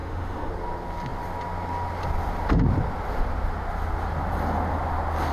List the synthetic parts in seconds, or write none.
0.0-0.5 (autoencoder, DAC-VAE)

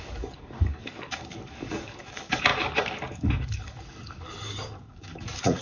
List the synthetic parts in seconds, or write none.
0.0-2.5 (codec, DAC); 3.1-5.6

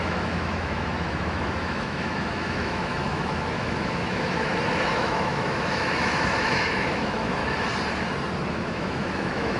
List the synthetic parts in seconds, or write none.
0.0-7.4 (autoencoder, DAC-VAE); 8.5-9.6

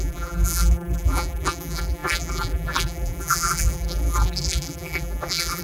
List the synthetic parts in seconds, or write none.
0.0-5.6 (vocoder, BigVGAN v2)

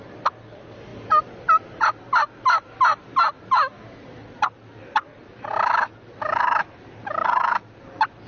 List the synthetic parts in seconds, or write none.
none